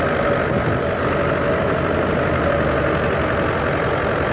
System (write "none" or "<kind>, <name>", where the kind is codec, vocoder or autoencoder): none